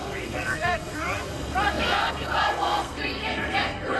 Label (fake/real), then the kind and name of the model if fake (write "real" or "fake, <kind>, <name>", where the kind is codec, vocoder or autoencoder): fake, codec, SNAC